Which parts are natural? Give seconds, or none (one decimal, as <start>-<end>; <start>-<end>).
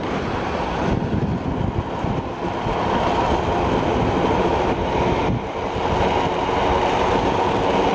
0.0-4.5; 5.2-7.9